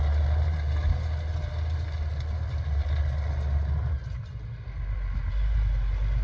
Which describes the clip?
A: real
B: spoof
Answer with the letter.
A